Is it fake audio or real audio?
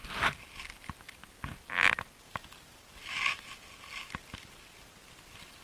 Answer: real